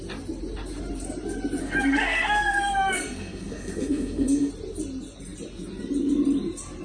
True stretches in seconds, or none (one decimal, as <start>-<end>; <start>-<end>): 0.0-1.6; 4.5-6.8